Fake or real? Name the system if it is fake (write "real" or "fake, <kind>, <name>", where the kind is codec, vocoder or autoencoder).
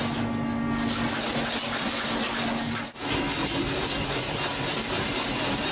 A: real